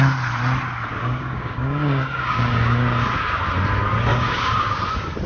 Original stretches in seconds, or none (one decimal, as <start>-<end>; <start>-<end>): 0.0-0.9; 3.4-4.1; 4.8-5.3